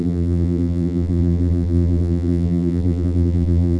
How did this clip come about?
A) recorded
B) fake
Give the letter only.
B